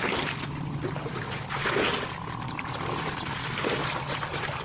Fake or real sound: real